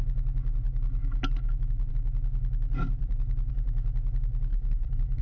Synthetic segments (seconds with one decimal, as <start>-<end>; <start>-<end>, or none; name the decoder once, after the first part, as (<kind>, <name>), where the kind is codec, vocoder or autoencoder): 3.0-3.5 (vocoder, BigVGAN v2); 4.5-5.2